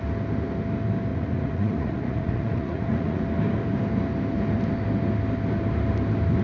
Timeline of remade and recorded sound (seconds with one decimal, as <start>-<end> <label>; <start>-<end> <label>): 0.0-1.1 recorded; 1.1-3.2 remade; 3.2-6.4 recorded